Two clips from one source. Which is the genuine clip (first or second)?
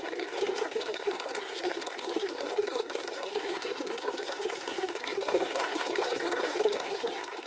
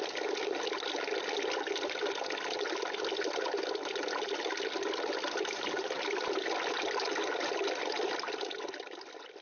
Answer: second